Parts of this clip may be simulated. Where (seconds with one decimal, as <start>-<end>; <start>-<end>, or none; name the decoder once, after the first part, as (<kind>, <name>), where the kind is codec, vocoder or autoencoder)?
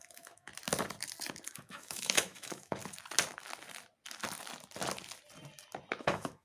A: 0.0-0.5 (autoencoder, DAC-VAE); 1.5-2.8; 6.0-6.4